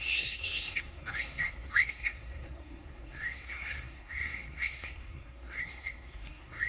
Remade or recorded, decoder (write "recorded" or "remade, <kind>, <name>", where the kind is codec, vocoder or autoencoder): remade, codec, SNAC